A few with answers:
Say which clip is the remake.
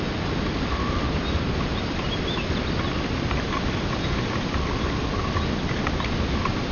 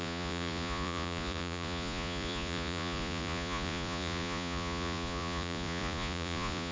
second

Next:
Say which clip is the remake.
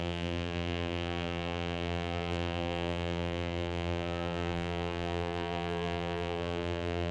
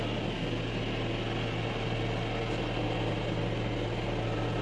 first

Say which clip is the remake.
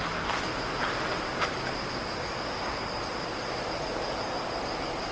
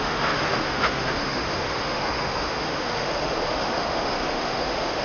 second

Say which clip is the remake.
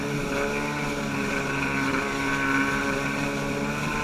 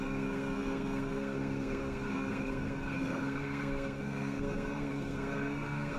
second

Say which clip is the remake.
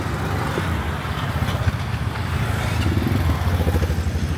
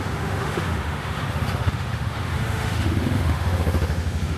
second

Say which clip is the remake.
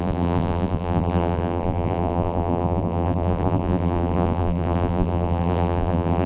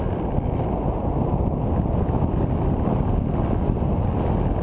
first